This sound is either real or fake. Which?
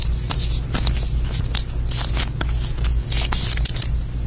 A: real